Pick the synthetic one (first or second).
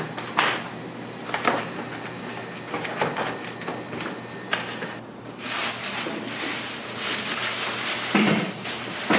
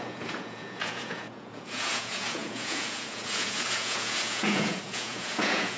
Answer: second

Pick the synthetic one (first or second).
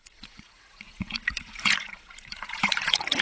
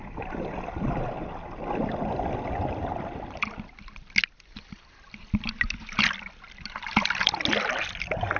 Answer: first